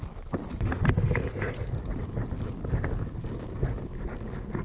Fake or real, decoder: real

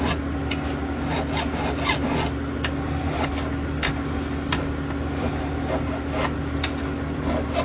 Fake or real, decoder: real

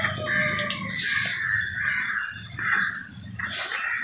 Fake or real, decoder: real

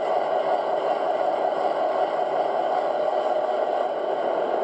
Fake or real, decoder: real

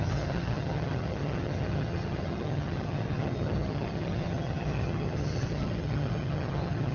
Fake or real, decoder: fake, vocoder, HiFi-GAN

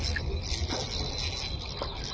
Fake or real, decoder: real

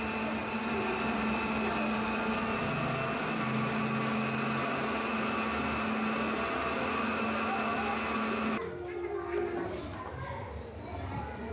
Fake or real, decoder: real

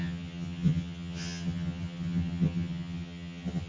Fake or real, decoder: fake, vocoder, HiFi-GAN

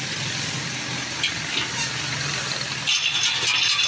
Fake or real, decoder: real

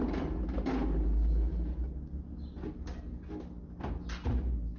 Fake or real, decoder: real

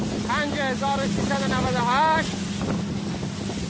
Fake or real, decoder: real